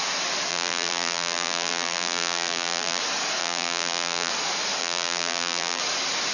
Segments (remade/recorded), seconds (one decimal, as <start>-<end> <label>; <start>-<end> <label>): 0.0-0.5 recorded; 0.5-3.0 remade; 3.0-3.4 recorded; 3.4-4.3 remade; 4.3-4.8 recorded; 4.8-5.8 remade; 5.8-6.3 recorded